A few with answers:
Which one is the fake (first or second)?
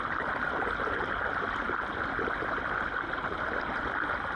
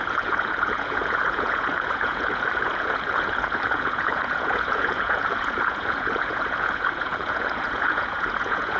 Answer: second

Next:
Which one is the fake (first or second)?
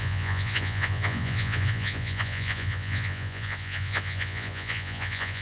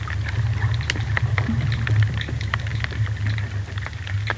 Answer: first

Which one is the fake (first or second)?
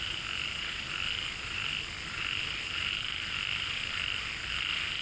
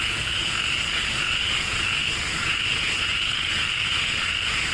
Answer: second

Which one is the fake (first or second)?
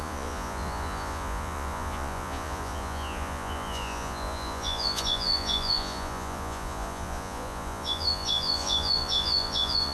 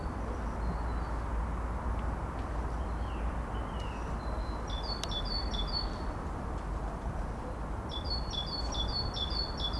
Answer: first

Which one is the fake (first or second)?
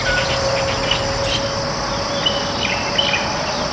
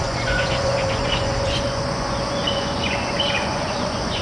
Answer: second